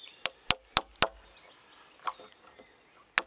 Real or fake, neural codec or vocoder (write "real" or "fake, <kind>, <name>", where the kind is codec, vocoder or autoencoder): real